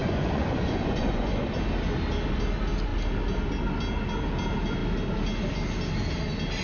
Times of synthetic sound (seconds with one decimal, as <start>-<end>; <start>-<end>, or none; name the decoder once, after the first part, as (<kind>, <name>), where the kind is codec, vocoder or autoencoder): 0.0-1.4 (vocoder, Vocos)